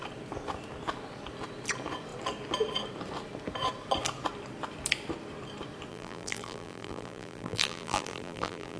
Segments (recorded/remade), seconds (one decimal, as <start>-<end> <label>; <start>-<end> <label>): 0.0-5.9 recorded; 5.9-8.8 remade